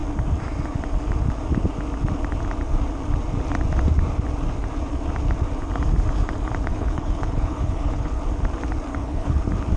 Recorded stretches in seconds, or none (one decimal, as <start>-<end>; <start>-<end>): 0.0-6.7; 8.2-8.9; 9.4-9.8